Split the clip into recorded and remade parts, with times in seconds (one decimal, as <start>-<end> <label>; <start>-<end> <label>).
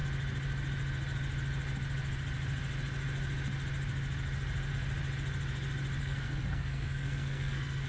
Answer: 0.0-6.0 recorded; 6.0-7.9 remade